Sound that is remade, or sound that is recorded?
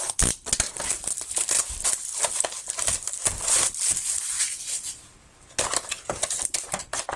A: recorded